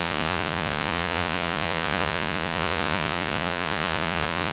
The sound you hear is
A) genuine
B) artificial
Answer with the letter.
B